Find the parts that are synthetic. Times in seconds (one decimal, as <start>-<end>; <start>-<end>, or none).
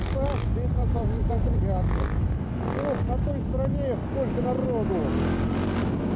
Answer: 0.7-1.6